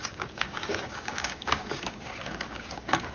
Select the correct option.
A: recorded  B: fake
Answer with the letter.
B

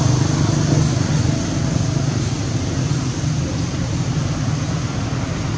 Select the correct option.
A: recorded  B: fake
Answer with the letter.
A